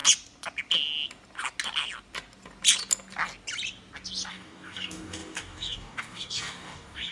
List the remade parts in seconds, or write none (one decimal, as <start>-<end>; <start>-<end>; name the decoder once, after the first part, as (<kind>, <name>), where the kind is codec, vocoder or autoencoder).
4.3-7.1 (codec, DAC)

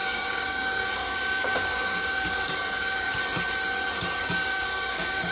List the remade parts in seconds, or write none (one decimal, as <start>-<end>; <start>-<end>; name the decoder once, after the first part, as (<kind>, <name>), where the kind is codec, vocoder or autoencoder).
0.0-3.2 (codec, DAC); 4.2-5.3

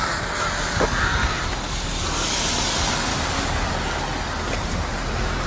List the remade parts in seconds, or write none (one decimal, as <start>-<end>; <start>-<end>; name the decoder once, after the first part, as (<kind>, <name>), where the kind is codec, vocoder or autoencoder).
1.2-2.4 (codec, DAC); 3.1-3.7

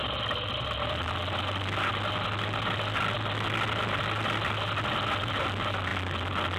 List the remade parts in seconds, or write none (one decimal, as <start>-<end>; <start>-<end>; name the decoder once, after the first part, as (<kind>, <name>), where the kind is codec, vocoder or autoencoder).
none

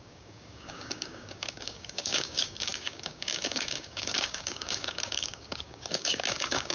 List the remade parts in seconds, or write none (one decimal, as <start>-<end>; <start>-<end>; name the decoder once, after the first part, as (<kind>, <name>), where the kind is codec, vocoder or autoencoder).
0.0-6.7 (codec, DAC)